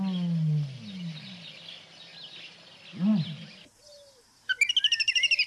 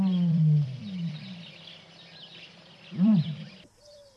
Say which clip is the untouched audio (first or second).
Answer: first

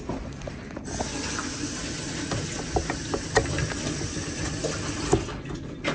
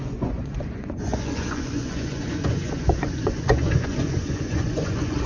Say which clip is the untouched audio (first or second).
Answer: first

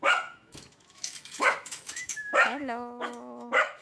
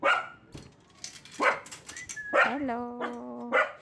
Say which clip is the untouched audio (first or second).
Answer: second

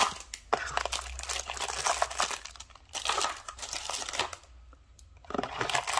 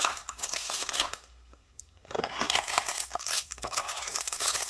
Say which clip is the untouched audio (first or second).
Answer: first